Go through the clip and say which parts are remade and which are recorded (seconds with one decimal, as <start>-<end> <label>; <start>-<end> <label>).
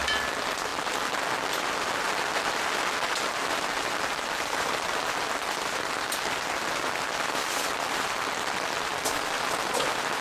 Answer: 0.0-10.2 recorded